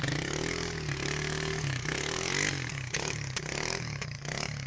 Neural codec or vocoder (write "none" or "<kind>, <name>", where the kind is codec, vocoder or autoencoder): codec, DAC